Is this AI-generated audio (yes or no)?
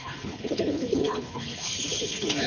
yes